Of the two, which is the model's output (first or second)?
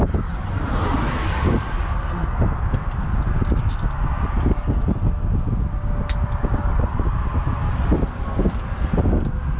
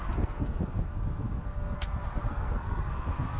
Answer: second